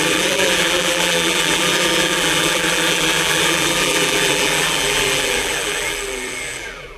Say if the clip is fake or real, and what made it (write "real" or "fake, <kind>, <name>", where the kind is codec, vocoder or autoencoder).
fake, vocoder, BigVGAN v2